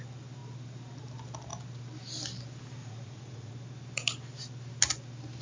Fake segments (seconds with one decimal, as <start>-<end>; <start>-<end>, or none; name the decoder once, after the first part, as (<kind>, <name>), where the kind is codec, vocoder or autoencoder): 2.8-3.5 (vocoder, Vocos)